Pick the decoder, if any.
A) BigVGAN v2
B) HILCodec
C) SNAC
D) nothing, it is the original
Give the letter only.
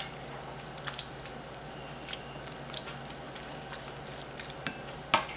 D